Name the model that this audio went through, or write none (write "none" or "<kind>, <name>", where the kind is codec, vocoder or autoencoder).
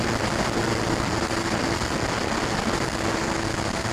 none